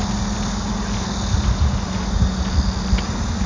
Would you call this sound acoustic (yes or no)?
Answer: yes